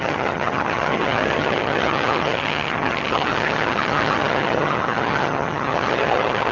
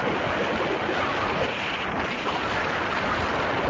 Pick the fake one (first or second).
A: first